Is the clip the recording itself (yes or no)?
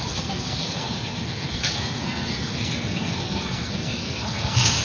no